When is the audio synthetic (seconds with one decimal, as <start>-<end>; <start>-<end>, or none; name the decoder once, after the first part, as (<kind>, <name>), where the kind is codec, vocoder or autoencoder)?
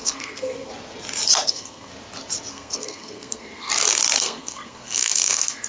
0.0-0.7 (codec, SNAC); 1.5-1.9; 2.5-3.7; 4.2-5.7